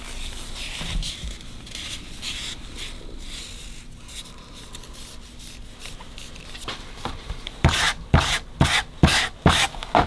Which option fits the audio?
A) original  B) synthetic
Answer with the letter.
A